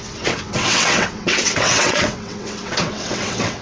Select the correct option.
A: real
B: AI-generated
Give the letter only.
B